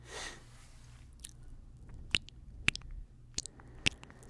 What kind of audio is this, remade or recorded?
recorded